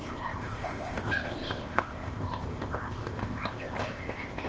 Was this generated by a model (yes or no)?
yes